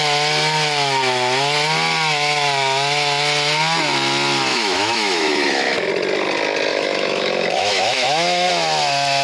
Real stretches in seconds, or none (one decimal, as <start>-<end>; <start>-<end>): 0.0-4.5; 5.9-6.7; 8.5-9.2